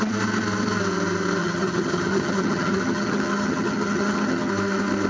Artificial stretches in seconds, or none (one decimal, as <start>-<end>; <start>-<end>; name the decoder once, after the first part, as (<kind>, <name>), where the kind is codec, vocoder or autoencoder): 1.4-4.5 (vocoder, HiFi-GAN)